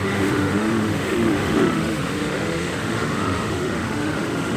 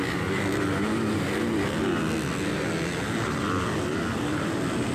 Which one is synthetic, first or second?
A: first